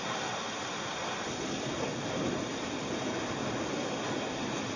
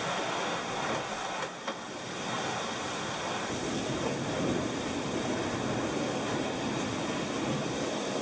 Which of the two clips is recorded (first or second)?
second